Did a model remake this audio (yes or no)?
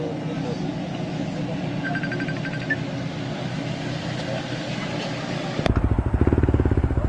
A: no